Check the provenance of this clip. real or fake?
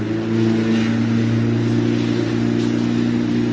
real